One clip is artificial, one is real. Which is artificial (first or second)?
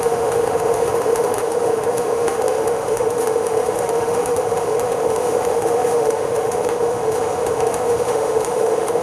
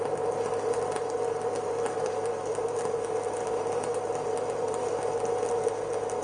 first